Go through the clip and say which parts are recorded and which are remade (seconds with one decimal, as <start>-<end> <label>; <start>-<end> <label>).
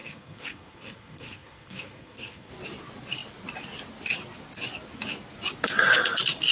0.0-2.5 remade; 2.5-6.5 recorded